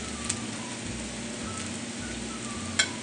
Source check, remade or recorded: recorded